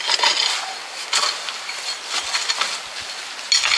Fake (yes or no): no